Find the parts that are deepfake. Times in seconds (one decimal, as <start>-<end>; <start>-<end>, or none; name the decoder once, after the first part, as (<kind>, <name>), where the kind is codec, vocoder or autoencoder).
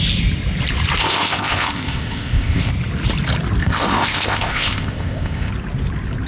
1.0-2.7 (codec, ZipCodec); 3.6-5.5